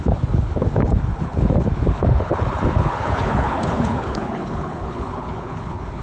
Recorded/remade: remade